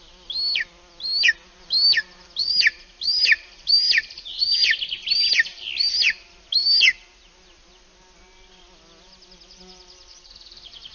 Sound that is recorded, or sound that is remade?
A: recorded